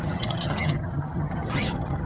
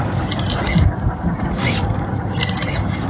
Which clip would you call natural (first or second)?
second